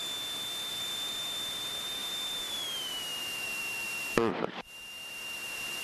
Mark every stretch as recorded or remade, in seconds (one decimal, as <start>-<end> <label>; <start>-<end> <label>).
0.0-0.7 recorded; 0.7-5.8 remade